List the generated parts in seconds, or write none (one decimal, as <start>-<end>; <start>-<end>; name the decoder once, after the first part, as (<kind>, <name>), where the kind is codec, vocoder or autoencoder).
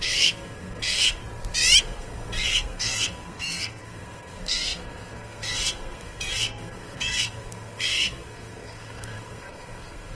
0.0-1.2 (codec, SNAC); 1.8-10.2